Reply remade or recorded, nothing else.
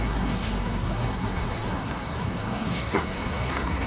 remade